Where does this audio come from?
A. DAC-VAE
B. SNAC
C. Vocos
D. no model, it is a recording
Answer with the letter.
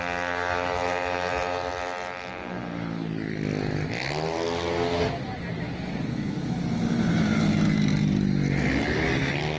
D